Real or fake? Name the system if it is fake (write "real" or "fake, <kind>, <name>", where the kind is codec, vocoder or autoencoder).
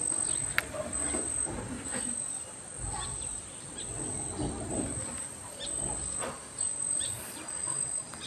real